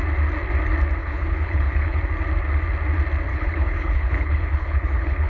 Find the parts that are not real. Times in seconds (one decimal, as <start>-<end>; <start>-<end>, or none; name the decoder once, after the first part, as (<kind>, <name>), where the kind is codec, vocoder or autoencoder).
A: 1.0-2.0 (codec, HILCodec); 3.3-5.3